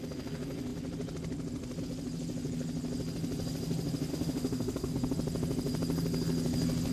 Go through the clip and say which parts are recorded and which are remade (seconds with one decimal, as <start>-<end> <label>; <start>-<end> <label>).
0.0-4.1 recorded; 4.1-4.9 remade; 4.9-6.9 recorded